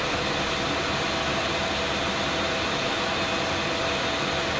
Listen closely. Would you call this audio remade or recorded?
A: recorded